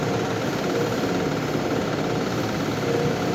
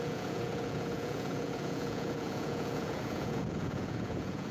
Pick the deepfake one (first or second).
second